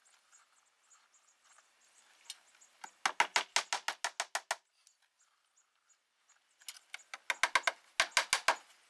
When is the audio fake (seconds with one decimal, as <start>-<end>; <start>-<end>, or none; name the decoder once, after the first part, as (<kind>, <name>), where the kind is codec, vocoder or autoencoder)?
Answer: none